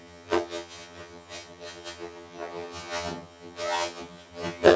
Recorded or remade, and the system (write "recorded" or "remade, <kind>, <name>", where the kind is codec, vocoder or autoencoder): remade, vocoder, HiFi-GAN